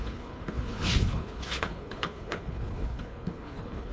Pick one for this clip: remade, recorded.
remade